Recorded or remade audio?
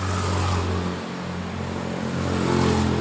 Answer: recorded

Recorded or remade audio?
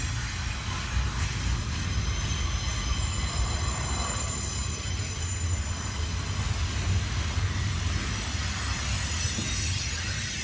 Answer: recorded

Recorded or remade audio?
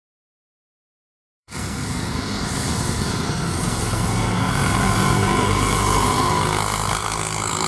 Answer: remade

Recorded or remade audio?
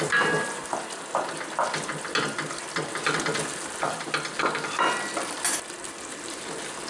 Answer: recorded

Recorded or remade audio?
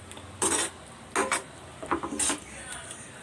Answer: recorded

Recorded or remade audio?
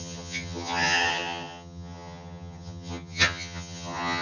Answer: remade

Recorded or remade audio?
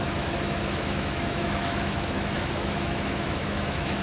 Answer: remade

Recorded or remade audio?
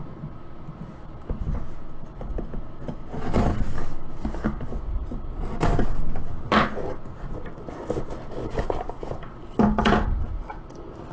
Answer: recorded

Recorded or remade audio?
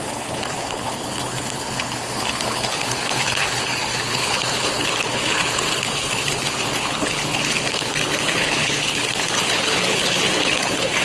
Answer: remade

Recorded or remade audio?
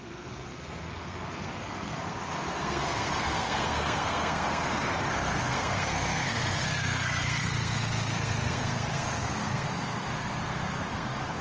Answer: remade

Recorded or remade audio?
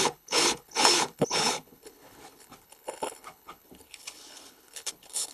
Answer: remade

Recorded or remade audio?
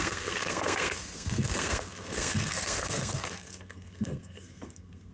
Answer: remade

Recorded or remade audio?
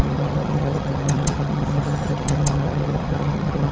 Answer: remade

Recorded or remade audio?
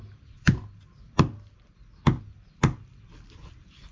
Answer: recorded